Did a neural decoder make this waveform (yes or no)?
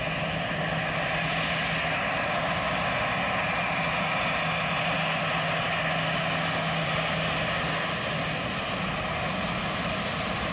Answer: no